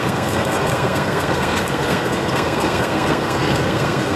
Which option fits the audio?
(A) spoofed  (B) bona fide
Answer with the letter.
A